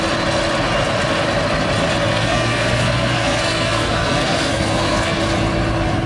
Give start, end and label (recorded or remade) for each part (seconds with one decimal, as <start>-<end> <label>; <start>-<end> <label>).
0.0-2.1 recorded; 2.1-5.2 remade; 5.2-6.1 recorded